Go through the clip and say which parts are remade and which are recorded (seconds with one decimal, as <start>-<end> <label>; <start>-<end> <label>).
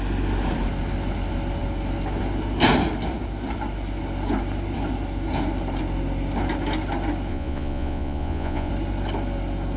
0.0-7.3 recorded; 7.3-8.7 remade; 8.7-9.8 recorded